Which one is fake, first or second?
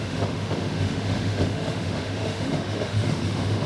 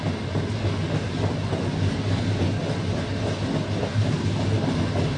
first